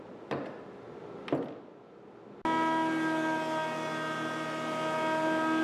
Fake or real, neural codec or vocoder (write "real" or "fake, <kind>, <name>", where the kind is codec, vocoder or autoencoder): real